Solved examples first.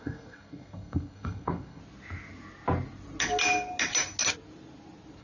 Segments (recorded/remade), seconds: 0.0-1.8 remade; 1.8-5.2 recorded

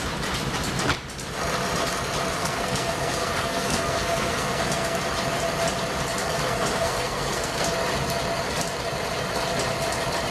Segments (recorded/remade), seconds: 0.0-2.4 recorded; 2.4-5.0 remade; 5.0-6.2 recorded; 6.2-7.7 remade; 7.7-10.3 recorded

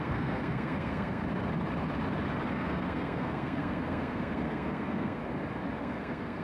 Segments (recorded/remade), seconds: 0.0-1.2 remade; 1.2-2.5 recorded; 2.5-5.2 remade; 5.2-5.8 recorded; 5.8-6.4 remade